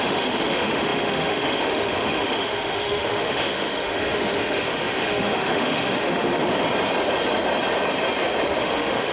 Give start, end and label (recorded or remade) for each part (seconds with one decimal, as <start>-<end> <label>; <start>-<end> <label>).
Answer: 0.0-6.4 remade; 6.4-8.6 recorded; 8.6-9.1 remade